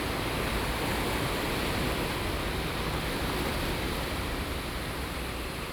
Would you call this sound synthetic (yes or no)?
no